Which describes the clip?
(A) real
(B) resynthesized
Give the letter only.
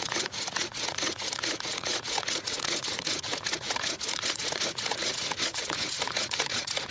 B